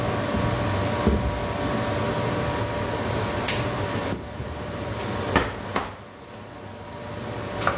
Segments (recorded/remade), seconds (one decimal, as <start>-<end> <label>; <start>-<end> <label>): 0.0-2.6 recorded; 2.6-5.0 remade; 5.0-7.8 recorded